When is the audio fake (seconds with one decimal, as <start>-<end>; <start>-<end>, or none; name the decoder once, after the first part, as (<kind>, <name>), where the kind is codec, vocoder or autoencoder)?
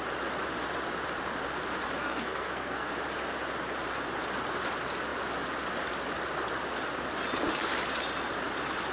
2.0-2.9 (codec, SNAC)